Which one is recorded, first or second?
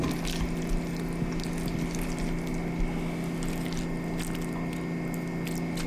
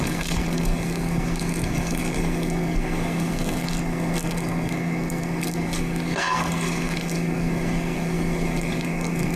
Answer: first